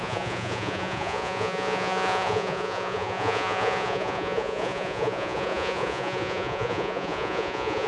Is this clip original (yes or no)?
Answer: no